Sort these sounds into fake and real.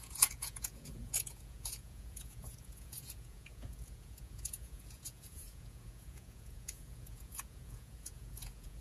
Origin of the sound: fake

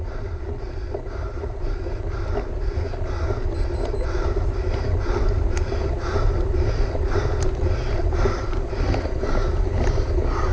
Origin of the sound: real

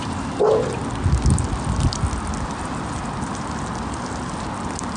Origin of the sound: real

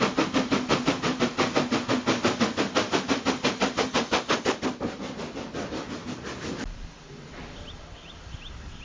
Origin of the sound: real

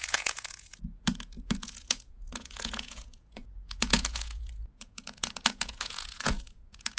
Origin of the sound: fake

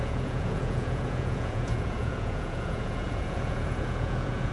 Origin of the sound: fake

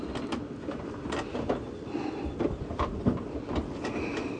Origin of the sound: real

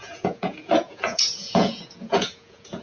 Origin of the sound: fake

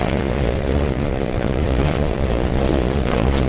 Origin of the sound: fake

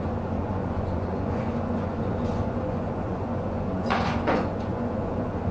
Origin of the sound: fake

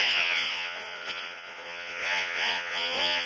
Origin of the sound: fake